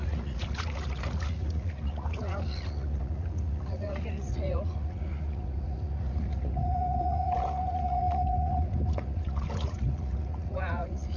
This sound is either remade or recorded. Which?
remade